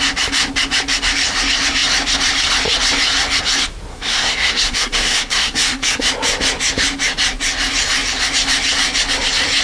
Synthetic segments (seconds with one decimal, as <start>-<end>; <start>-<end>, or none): 3.9-6.1